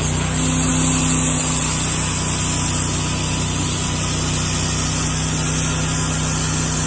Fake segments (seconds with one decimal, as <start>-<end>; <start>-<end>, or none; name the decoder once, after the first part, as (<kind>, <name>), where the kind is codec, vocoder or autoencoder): none